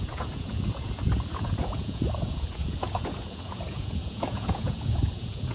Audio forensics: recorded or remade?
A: remade